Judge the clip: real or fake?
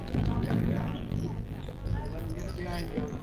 fake